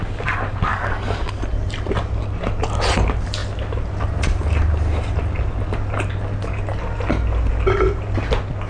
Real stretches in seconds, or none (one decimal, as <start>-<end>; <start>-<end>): 0.0-0.7; 1.4-8.7